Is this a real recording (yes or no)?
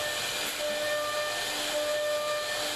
yes